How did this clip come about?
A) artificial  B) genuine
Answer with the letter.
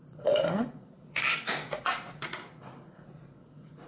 A